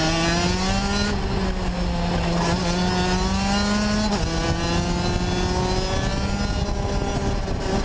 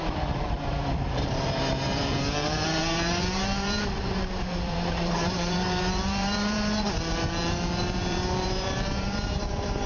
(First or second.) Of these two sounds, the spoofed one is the second